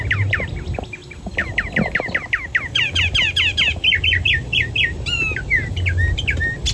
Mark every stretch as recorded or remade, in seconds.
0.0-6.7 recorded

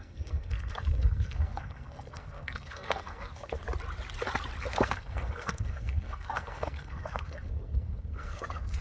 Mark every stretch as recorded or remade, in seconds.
0.0-3.6 remade; 3.6-4.6 recorded; 4.6-8.8 remade

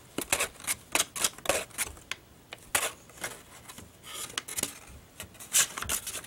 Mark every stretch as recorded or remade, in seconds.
0.0-6.3 recorded

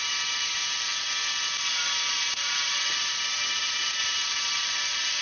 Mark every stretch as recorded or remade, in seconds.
0.0-0.9 remade; 0.9-1.5 recorded; 1.5-5.2 remade

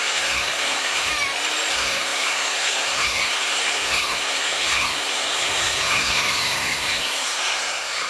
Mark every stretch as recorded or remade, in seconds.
0.0-1.1 remade; 1.1-1.7 recorded; 1.7-8.1 remade

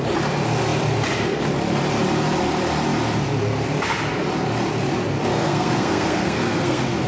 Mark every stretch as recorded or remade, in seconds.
0.0-5.3 recorded; 5.3-7.1 remade

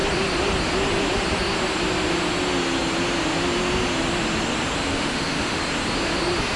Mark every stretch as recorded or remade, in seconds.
0.0-4.9 recorded; 4.9-5.6 remade; 5.6-6.6 recorded

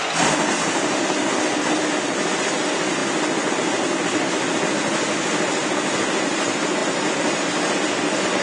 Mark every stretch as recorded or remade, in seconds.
0.0-8.4 recorded